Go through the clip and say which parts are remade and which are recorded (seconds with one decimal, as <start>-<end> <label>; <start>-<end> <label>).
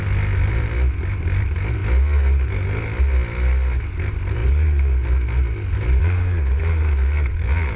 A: 0.0-7.8 recorded